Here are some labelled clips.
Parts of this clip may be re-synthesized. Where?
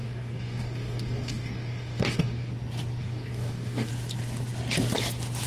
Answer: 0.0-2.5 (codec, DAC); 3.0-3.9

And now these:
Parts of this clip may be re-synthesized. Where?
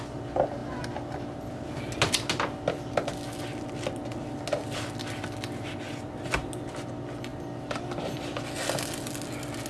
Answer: none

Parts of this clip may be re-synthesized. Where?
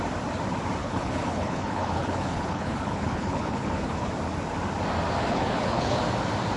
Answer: 0.8-4.1 (codec, HILCodec); 5.2-6.0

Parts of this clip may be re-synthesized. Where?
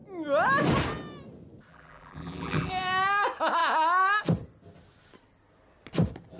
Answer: 1.7-2.7 (vocoder, BigVGAN v2)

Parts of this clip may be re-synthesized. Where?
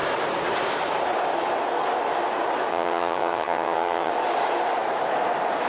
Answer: 2.7-4.1 (vocoder, HiFi-GAN)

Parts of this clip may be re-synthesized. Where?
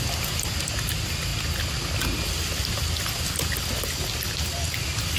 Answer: none